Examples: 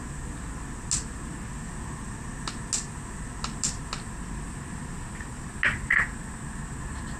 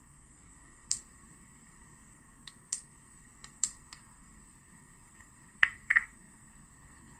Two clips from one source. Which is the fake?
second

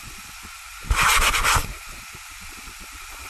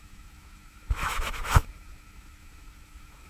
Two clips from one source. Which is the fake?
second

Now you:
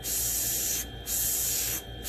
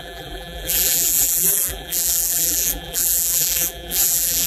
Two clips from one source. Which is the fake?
second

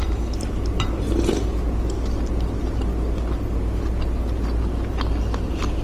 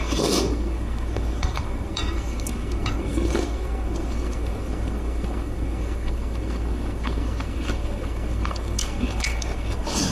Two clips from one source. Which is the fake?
second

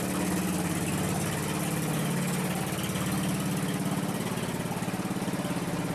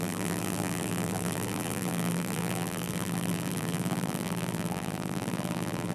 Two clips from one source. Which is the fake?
second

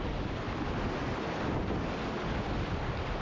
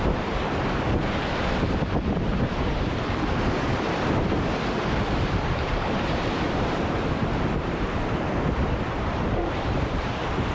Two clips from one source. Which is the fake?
second